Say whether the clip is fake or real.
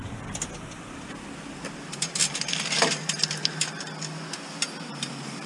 real